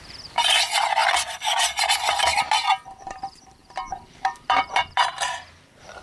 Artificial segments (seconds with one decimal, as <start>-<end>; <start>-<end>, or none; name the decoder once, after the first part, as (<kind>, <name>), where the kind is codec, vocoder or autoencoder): 0.0-1.0 (vocoder, BigVGAN v2); 2.9-6.0